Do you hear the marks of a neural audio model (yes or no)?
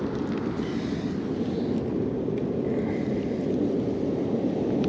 no